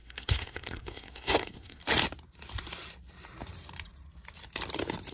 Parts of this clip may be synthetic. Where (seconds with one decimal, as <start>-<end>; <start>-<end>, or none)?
0.0-1.8